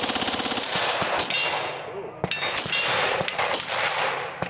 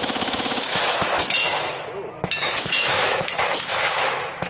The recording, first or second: first